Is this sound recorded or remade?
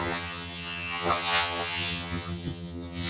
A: remade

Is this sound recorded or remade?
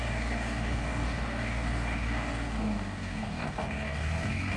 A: remade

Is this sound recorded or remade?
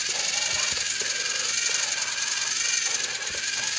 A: recorded